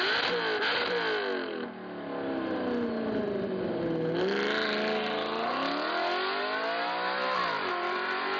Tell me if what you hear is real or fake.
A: real